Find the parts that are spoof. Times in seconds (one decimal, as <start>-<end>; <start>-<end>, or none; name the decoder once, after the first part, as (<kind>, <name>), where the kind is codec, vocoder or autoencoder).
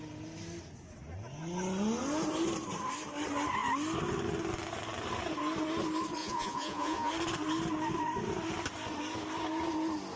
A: 6.2-7.1 (vocoder, Vocos)